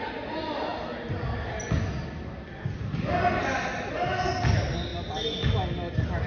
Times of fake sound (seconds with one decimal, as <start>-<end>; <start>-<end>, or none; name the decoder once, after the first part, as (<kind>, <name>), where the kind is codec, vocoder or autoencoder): none